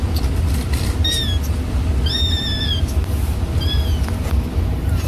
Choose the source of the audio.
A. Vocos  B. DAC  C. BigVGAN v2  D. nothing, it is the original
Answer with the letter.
D